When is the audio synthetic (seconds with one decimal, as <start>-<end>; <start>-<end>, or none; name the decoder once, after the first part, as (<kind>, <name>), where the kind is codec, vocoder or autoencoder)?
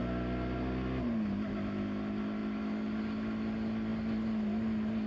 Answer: none